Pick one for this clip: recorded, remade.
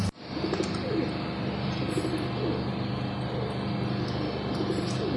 recorded